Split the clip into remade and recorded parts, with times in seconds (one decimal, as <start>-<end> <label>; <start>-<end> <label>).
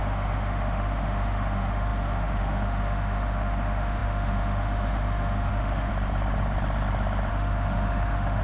0.0-5.9 remade; 5.9-7.3 recorded; 7.3-8.4 remade